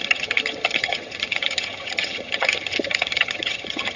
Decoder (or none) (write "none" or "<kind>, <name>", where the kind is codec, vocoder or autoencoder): vocoder, HiFi-GAN